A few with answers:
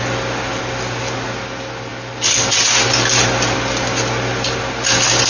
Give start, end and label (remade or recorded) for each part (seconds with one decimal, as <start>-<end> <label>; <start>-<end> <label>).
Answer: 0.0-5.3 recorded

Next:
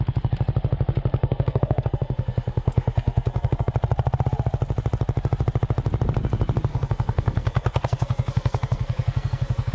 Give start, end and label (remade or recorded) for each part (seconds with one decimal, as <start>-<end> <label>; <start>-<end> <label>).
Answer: 0.0-1.2 recorded; 1.2-3.7 remade; 3.7-6.7 recorded; 6.7-9.7 remade

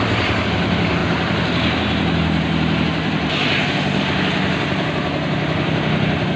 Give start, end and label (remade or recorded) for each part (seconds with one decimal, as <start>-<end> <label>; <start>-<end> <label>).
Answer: 0.0-6.4 recorded